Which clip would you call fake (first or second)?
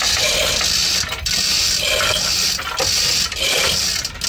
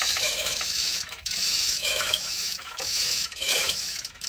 second